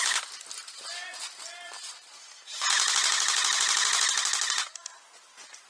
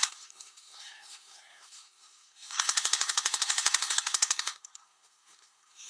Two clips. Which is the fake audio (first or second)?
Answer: second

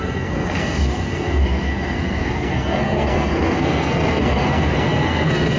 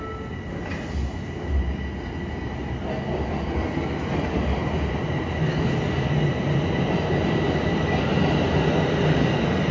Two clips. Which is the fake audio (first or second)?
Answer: first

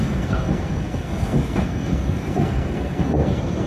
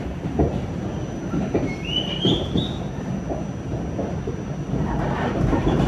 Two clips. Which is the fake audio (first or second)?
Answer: first